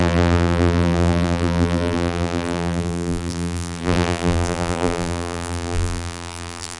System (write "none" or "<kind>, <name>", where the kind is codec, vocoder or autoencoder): vocoder, BigVGAN v2